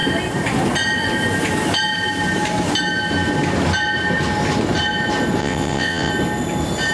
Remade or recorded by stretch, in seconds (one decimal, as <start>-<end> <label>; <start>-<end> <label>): 0.0-5.4 recorded; 5.4-6.1 remade; 6.1-6.9 recorded